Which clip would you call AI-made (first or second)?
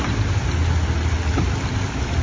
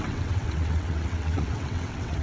second